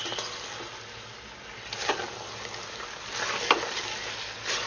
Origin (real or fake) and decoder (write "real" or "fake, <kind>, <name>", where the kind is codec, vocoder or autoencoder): real